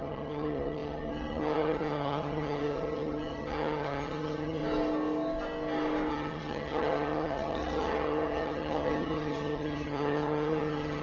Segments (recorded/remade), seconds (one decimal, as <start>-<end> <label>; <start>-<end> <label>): 0.0-4.6 remade; 4.6-6.1 recorded; 6.1-11.0 remade